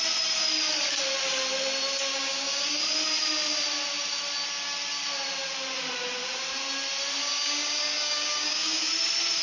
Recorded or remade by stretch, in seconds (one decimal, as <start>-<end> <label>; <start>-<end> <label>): 0.0-2.1 recorded; 2.1-2.8 remade; 2.8-7.2 recorded; 7.2-8.9 remade; 8.9-9.4 recorded